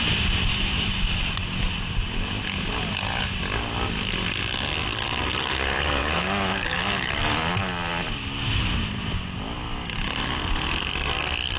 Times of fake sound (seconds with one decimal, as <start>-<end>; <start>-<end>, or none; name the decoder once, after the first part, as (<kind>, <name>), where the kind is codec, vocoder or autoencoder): 0.5-1.1 (autoencoder, DAC-VAE); 6.0-7.2